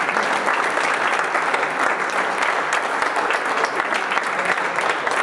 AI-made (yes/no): no